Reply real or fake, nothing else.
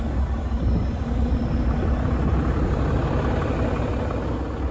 real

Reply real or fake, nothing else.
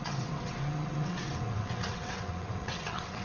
fake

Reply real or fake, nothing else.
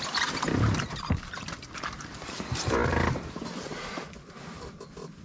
real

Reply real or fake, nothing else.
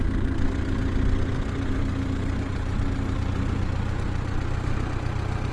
real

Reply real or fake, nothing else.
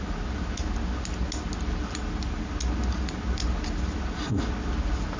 real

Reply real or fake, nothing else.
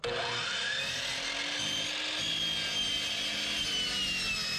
real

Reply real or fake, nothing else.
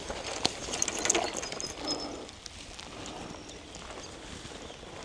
real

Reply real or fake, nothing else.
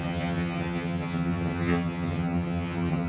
fake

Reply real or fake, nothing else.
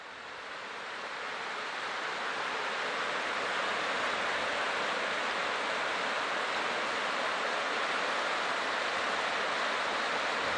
real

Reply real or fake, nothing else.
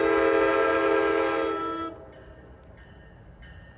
real